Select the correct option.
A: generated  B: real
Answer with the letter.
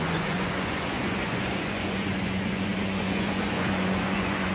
A